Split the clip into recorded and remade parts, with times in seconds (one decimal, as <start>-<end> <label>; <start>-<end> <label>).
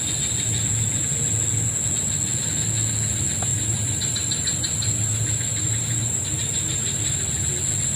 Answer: 0.0-3.5 recorded; 3.5-7.4 remade; 7.4-8.0 recorded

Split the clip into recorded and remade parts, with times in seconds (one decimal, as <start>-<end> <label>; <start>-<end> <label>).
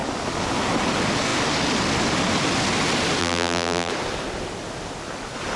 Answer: 0.0-3.2 recorded; 3.2-3.9 remade; 3.9-5.6 recorded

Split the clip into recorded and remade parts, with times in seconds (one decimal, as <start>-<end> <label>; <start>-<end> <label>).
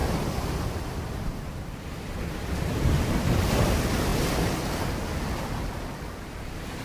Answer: 0.0-0.9 remade; 0.9-6.8 recorded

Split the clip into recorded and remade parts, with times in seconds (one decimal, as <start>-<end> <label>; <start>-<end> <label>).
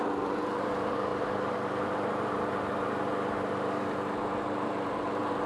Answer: 0.0-5.5 remade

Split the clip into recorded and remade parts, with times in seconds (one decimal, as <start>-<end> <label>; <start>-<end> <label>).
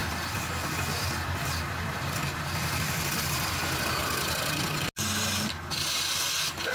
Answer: 0.0-4.0 remade; 4.0-6.7 recorded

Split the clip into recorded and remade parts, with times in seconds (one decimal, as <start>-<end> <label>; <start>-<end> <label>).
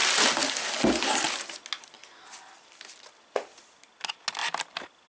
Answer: 0.0-5.1 recorded